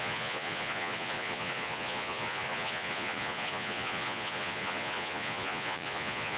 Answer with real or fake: fake